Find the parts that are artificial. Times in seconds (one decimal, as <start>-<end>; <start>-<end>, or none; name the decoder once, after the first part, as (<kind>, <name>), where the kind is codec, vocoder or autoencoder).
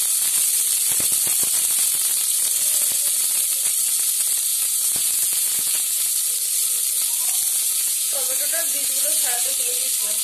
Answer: 4.5-6.1 (vocoder, Vocos); 7.5-9.5